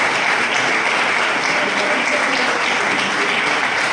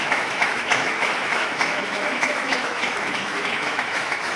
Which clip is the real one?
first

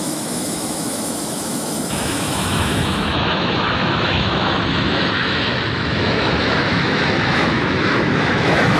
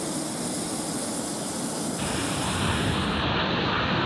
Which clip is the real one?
second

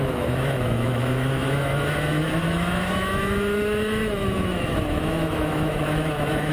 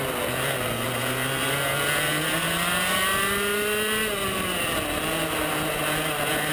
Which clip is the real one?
second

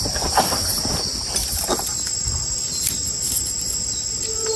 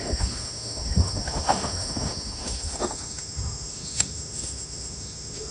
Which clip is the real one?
first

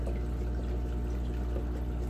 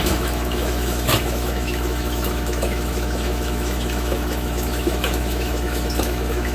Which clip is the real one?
first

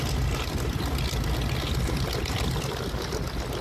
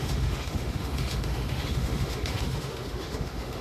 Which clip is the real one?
first